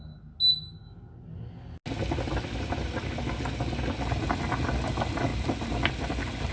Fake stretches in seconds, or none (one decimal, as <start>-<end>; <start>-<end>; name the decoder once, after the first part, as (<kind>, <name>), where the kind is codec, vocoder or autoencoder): none